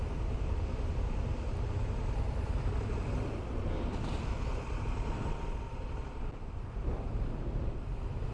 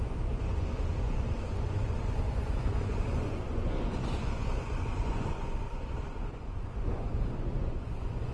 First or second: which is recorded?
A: first